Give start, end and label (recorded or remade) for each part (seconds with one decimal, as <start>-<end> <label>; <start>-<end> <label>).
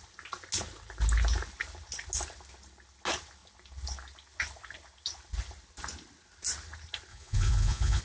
0.0-7.1 recorded; 7.1-8.0 remade